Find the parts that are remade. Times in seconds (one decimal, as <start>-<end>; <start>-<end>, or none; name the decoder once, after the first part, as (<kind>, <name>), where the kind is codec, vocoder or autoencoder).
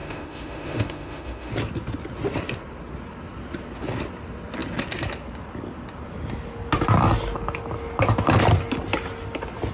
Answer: 0.0-1.5 (autoencoder, DAC-VAE)